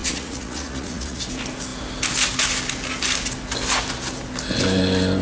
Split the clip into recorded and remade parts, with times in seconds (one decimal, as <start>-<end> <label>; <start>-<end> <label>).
0.0-1.2 remade; 1.2-5.2 recorded